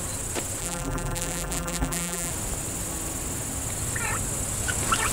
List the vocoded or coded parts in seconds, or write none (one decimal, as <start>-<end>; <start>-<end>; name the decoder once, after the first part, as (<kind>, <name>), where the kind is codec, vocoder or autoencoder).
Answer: 0.6-2.3 (vocoder, BigVGAN v2)

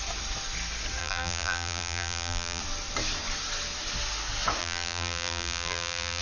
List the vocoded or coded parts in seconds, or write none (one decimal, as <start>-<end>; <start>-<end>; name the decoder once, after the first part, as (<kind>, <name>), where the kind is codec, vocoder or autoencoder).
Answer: 1.0-2.6 (vocoder, BigVGAN v2); 4.6-6.2

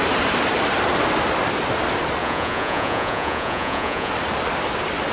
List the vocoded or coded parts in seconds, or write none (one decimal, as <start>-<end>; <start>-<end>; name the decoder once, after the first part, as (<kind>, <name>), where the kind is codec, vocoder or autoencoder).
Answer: 2.2-4.1 (vocoder, Vocos)

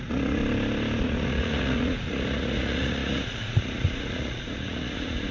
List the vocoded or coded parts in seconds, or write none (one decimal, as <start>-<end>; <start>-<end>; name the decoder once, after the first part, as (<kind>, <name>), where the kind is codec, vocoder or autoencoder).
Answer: 0.0-0.4 (vocoder, Vocos); 1.0-5.3

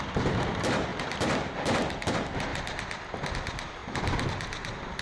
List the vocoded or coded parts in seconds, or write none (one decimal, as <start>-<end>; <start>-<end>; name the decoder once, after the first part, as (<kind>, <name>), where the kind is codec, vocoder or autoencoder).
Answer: 0.0-3.8 (vocoder, BigVGAN v2); 4.3-5.0

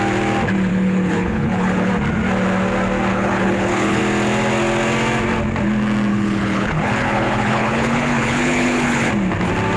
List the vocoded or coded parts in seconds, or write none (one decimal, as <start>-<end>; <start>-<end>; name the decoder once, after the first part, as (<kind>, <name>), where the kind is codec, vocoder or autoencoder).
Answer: 0.7-1.9 (codec, HILCodec); 3.1-4.0; 6.1-9.1

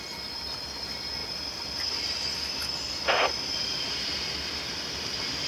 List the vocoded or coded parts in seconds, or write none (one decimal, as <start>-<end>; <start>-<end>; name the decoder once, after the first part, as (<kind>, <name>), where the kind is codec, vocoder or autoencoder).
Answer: none